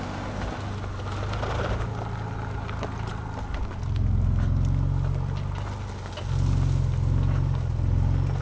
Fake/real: real